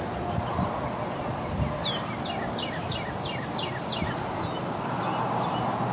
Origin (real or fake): real